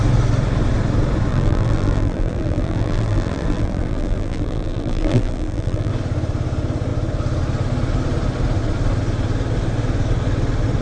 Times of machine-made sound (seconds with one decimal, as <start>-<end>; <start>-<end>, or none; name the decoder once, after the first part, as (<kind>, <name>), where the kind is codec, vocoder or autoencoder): 1.3-5.9 (vocoder, BigVGAN v2)